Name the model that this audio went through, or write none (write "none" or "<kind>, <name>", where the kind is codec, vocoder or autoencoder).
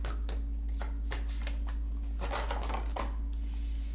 none